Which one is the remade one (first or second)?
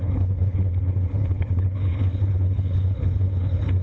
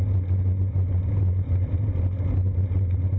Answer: first